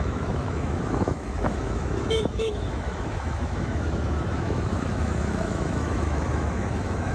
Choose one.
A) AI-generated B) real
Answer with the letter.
A